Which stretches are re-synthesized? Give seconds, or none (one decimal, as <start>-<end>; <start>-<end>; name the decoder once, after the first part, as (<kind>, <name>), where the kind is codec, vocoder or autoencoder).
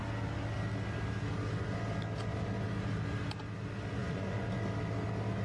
4.0-4.6 (vocoder, Vocos)